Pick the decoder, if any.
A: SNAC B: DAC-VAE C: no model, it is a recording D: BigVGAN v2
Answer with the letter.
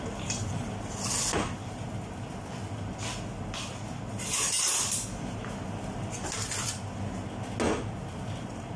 C